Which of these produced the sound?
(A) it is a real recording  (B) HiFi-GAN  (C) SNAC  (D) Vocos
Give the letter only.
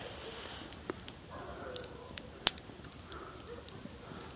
A